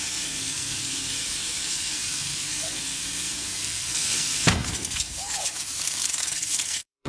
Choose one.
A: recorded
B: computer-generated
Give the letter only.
B